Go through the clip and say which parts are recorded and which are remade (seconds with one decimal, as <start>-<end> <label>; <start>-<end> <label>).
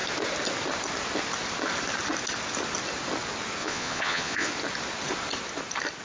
0.0-3.6 recorded; 3.6-4.5 remade; 4.5-6.0 recorded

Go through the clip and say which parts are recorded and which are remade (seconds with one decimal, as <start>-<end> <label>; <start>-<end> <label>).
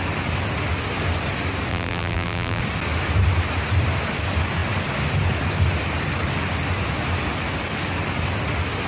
0.0-1.7 recorded; 1.7-2.6 remade; 2.6-8.9 recorded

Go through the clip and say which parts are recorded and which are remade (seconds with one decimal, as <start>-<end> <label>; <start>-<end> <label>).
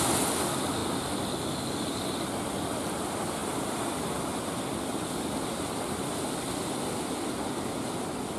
0.0-8.4 recorded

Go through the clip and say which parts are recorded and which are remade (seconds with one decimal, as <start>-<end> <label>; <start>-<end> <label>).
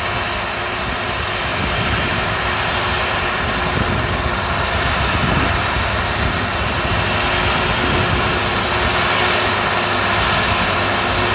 0.0-1.5 recorded; 1.5-2.4 remade; 2.4-11.3 recorded